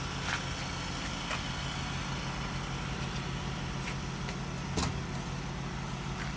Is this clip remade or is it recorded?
recorded